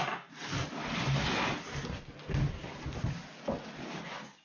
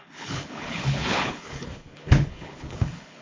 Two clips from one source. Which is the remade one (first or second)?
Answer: second